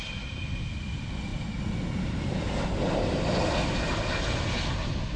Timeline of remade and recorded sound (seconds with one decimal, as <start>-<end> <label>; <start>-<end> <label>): 0.0-5.2 recorded